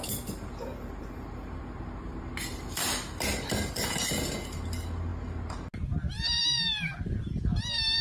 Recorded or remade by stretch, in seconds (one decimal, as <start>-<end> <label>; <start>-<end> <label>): 0.0-0.7 recorded; 0.7-1.6 remade; 1.6-8.0 recorded